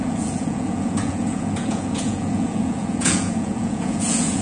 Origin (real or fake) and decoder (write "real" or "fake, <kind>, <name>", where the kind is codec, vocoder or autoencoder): fake, vocoder, Vocos